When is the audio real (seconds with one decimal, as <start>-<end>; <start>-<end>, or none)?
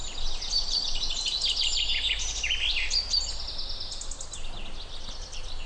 0.0-5.7